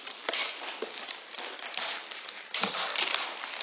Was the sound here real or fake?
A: real